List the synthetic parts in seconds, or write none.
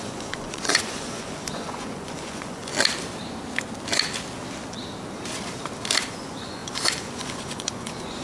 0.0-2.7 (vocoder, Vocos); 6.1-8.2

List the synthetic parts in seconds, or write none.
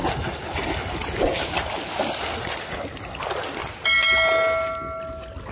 none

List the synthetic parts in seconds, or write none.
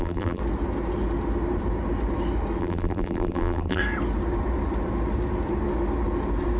0.0-0.4 (vocoder, BigVGAN v2); 2.6-3.8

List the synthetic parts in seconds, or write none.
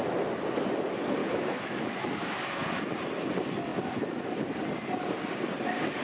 1.2-2.6 (autoencoder, DAC-VAE)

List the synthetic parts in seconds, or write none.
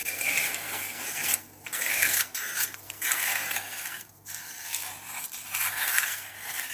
0.0-4.9 (codec, SNAC); 5.7-6.7